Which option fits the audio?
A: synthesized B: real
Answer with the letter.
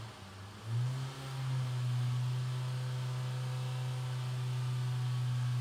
B